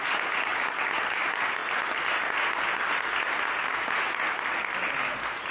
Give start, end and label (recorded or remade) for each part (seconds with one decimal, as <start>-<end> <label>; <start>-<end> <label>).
0.0-5.5 recorded